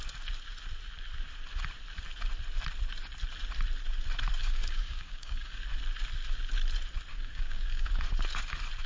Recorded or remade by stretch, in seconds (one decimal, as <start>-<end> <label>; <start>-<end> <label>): 0.0-4.4 recorded; 4.4-5.6 remade; 5.6-7.1 recorded; 7.1-7.9 remade; 7.9-8.9 recorded